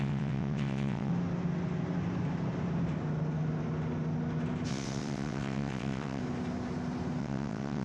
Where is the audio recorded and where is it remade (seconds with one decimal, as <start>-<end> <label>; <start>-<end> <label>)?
0.0-1.1 remade; 1.1-4.7 recorded; 4.7-6.2 remade; 6.2-7.2 recorded; 7.2-7.8 remade